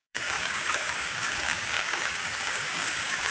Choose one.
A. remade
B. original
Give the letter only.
A